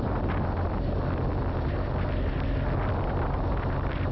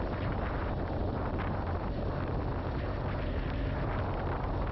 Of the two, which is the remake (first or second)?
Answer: second